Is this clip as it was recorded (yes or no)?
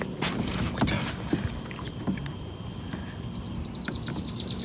yes